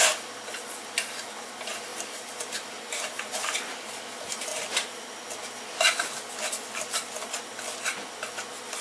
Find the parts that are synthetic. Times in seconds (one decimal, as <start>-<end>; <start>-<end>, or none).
1.9-3.9; 4.5-5.0